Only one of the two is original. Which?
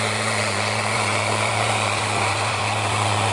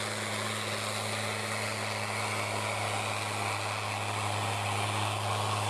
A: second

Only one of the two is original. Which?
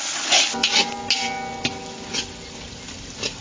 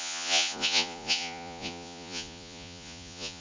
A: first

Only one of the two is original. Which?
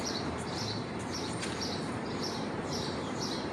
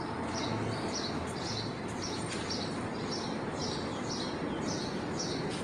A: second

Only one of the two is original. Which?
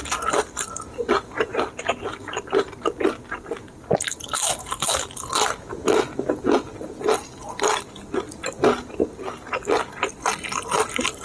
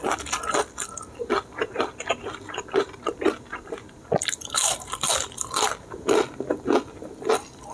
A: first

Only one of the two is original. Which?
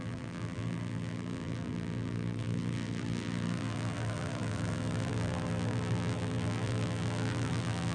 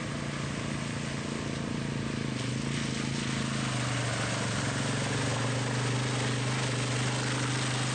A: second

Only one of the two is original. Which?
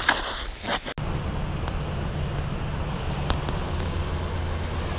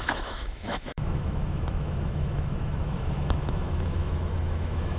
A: first